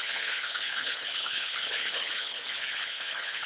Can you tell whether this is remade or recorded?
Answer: remade